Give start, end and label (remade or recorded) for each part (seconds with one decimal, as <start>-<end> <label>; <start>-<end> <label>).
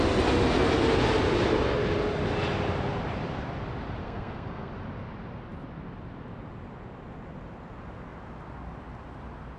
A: 0.0-4.0 recorded; 4.0-4.7 remade; 4.7-9.6 recorded